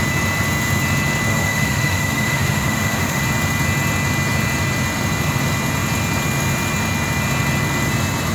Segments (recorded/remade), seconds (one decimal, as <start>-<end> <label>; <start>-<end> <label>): 0.0-1.3 recorded; 1.3-3.2 remade; 3.2-8.3 recorded